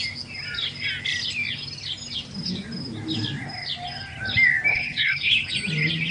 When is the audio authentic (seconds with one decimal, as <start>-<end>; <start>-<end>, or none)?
0.0-4.7; 5.5-6.1